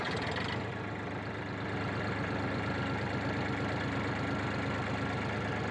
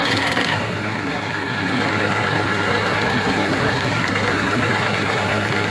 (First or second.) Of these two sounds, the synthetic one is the second